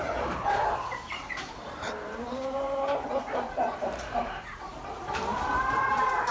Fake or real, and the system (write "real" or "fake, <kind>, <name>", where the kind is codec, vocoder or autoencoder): fake, vocoder, BigVGAN v2